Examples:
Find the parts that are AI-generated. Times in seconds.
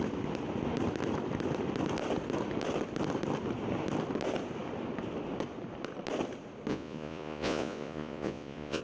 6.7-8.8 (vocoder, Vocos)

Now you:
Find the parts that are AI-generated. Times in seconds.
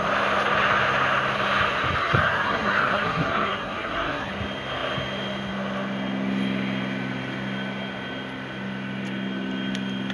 2.0-4.3 (codec, SNAC)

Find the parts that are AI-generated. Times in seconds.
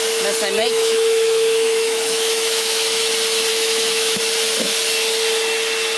0.6-3.1 (autoencoder, DAC-VAE); 3.5-4.2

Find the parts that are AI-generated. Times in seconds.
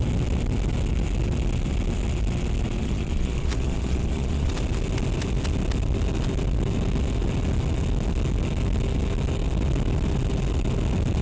2.8-4.5 (vocoder, Vocos)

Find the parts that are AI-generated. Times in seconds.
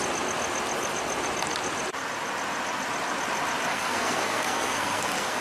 3.7-5.4 (codec, SNAC)